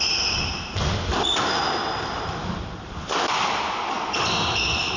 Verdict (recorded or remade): recorded